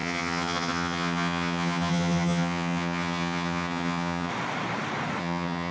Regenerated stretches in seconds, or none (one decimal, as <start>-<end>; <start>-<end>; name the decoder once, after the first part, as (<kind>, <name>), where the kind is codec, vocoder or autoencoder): 0.0-4.3 (vocoder, HiFi-GAN); 5.2-5.7

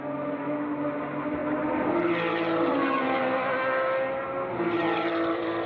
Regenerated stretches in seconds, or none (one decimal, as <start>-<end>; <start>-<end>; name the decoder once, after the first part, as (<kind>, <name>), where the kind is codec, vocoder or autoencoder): none

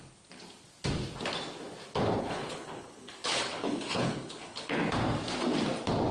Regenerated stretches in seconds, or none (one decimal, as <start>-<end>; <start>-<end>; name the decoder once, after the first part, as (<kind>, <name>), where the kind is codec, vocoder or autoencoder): 2.2-4.8 (codec, HILCodec)